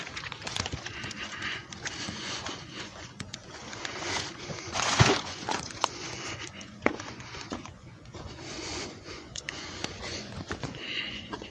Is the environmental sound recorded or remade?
remade